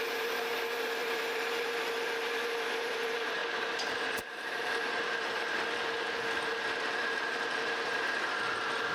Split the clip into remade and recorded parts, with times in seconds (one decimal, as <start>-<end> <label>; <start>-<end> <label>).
0.0-8.9 remade